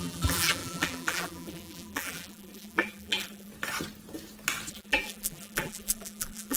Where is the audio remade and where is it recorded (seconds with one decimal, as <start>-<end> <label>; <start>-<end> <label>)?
0.0-3.5 remade; 3.5-4.7 recorded; 4.7-6.6 remade